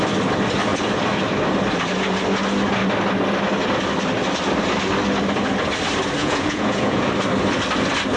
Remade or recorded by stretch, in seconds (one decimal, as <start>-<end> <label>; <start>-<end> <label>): 0.0-6.2 recorded; 6.2-7.1 remade; 7.1-8.2 recorded